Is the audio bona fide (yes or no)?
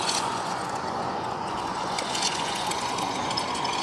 no